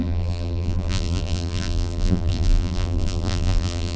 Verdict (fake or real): fake